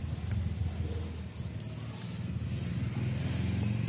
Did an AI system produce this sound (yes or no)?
no